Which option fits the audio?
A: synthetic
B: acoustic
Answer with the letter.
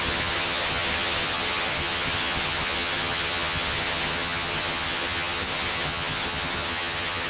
A